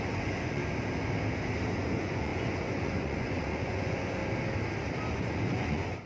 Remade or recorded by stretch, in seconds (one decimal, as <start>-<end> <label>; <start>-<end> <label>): 0.0-0.6 remade; 0.6-1.7 recorded; 1.7-4.2 remade; 4.2-5.1 recorded; 5.1-6.1 remade